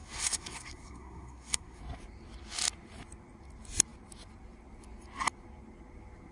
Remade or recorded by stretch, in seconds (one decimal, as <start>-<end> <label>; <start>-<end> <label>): 0.0-1.8 remade; 1.8-6.3 recorded